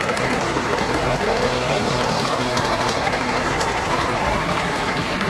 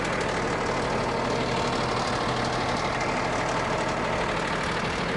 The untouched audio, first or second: second